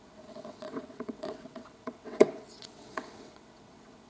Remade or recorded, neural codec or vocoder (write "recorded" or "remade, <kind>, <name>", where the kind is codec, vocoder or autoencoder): remade, vocoder, WaveNeXt